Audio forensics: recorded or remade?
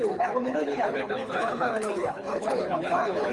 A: remade